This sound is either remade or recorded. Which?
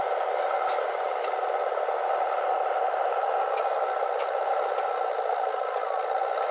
recorded